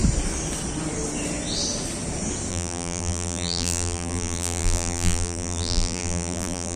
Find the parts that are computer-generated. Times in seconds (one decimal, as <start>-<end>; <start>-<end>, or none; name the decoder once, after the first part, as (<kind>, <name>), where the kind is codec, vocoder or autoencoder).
2.5-6.8 (vocoder, BigVGAN v2)